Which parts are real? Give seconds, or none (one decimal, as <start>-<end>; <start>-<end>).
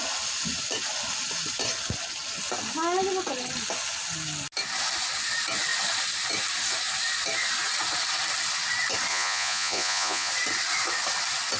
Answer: 0.0-9.1; 10.3-11.6